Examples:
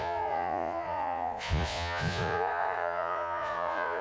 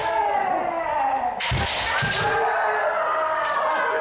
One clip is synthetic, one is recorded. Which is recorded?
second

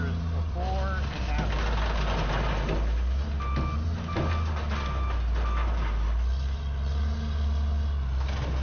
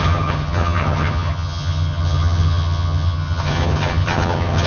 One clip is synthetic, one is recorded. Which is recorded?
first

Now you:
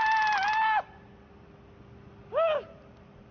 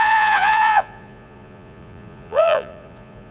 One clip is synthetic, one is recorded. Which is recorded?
first